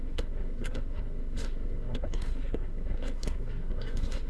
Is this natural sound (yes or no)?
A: no